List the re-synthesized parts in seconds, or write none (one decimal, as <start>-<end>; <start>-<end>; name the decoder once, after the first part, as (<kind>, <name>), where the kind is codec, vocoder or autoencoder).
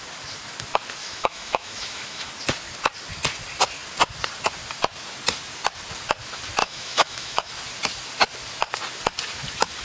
1.0-2.3 (autoencoder, DAC-VAE); 6.6-7.5